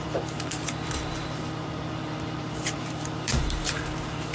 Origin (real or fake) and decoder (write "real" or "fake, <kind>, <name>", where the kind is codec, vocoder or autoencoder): fake, vocoder, BigVGAN v2